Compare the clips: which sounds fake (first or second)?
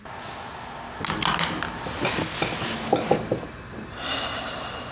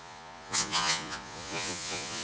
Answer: second